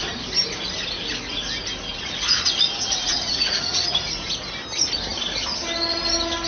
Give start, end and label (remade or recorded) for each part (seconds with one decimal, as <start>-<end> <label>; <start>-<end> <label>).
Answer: 0.0-1.9 recorded; 1.9-4.2 remade; 4.2-6.5 recorded